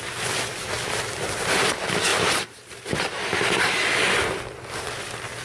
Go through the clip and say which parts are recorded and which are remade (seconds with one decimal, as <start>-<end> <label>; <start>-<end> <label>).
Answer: 0.0-2.1 recorded; 2.1-3.1 remade; 3.1-5.4 recorded